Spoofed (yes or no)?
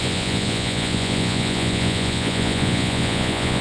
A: yes